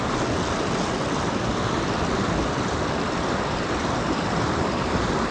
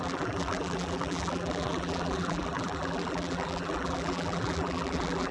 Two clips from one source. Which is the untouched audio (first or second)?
first